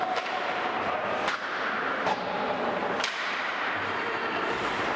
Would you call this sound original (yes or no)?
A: no